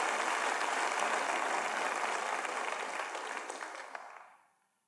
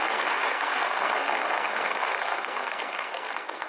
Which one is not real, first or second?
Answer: second